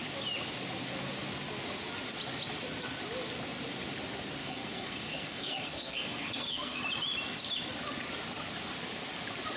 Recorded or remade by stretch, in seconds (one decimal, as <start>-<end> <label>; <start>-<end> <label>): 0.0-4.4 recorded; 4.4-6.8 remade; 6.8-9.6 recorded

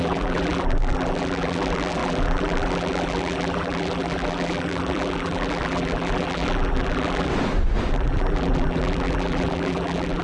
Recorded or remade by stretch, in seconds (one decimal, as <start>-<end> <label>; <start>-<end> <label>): 0.0-7.3 remade; 7.3-7.9 recorded; 7.9-10.2 remade

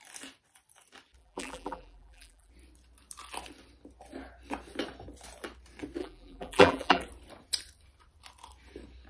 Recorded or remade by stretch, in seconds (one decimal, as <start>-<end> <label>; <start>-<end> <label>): 0.0-1.2 recorded; 1.2-2.5 remade; 2.5-6.0 recorded; 6.0-7.0 remade; 7.0-9.1 recorded

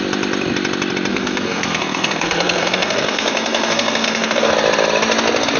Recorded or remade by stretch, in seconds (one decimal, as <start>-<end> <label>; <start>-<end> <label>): 0.0-1.1 recorded; 1.1-4.5 remade; 4.5-5.6 recorded